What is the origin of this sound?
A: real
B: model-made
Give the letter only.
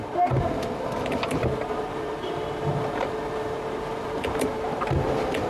B